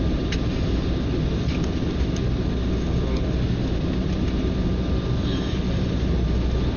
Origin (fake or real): real